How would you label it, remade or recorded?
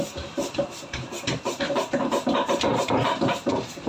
remade